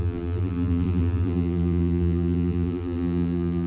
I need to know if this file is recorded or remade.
remade